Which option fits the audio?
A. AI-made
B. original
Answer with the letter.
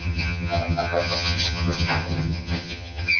A